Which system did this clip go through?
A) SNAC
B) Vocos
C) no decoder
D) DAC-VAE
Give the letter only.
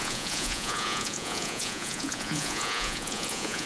B